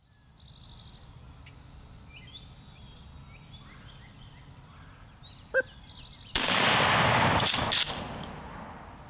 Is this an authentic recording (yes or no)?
yes